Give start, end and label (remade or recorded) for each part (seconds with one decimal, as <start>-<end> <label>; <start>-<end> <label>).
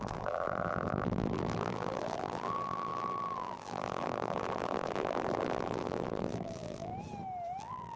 0.0-6.9 remade; 6.9-7.6 recorded; 7.6-8.0 remade